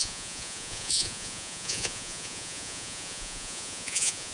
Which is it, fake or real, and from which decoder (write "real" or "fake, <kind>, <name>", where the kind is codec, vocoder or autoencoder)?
fake, vocoder, Vocos